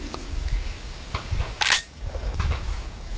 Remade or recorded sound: remade